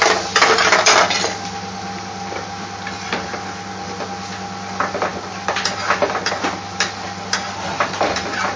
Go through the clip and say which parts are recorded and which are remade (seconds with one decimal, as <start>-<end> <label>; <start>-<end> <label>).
0.0-8.6 recorded